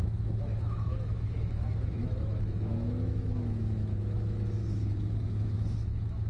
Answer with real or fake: fake